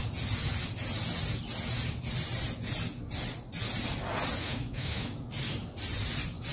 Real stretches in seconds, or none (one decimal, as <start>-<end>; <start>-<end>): 0.0-4.4; 5.3-6.5